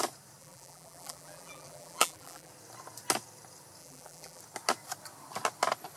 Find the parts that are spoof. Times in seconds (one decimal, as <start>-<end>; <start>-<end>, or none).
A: 0.4-2.5; 3.8-4.4